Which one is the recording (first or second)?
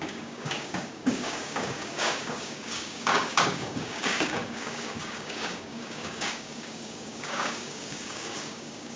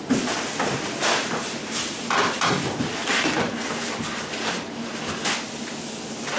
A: second